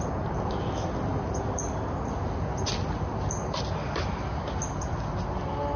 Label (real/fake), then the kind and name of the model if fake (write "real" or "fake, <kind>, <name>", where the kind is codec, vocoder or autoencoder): real